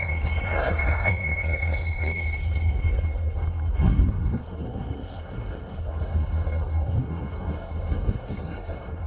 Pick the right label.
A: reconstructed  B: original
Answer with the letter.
A